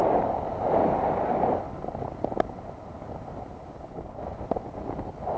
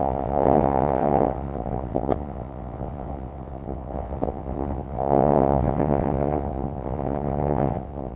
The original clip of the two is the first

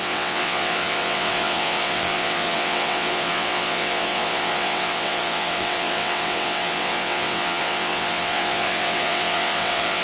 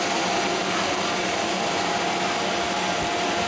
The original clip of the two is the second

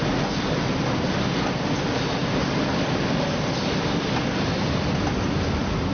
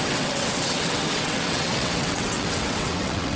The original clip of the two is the first